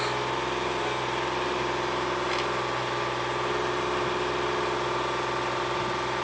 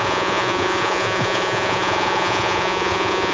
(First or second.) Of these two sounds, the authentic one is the first